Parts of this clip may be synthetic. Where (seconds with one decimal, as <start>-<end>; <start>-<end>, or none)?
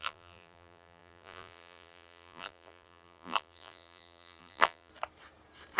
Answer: 0.0-4.9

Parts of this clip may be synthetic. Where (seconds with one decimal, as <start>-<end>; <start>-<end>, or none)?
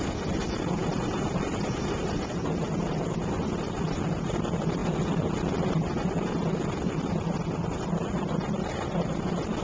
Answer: none